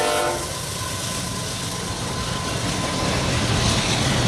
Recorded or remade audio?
recorded